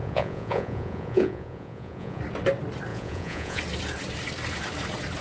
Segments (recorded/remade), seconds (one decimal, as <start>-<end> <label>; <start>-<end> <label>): 0.0-2.2 remade; 2.2-2.9 recorded; 2.9-3.6 remade; 3.6-5.2 recorded